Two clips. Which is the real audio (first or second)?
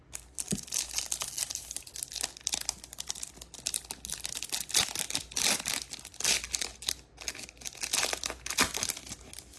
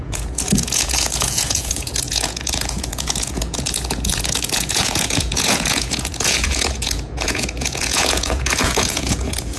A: first